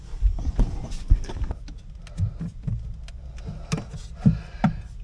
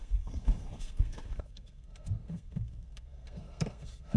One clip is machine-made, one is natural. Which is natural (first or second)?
first